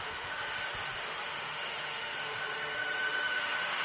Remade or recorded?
remade